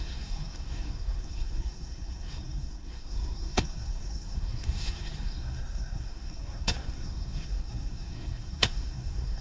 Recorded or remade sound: remade